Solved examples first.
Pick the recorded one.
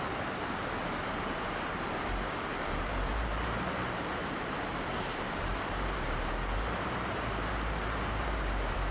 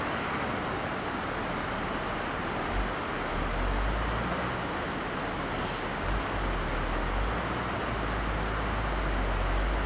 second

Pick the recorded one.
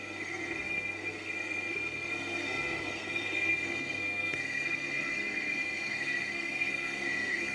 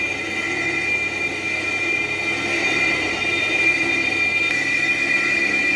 second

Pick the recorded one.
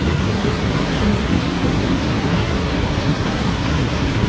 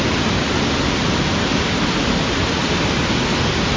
second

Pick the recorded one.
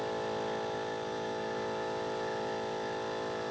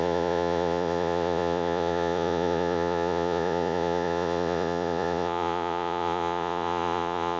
first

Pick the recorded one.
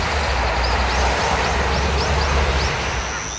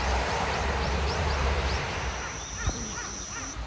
first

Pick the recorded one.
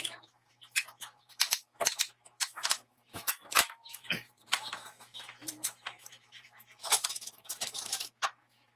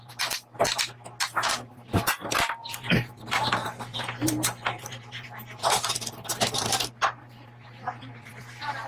second